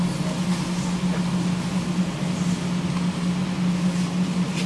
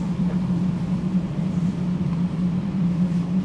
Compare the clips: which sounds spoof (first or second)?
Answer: second